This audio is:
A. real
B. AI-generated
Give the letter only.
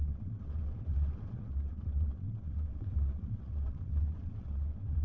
B